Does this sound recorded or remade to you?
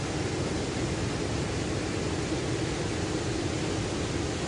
recorded